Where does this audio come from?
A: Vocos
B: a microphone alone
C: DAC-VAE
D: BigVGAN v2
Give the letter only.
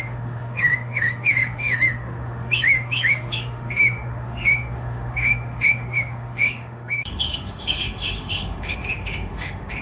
C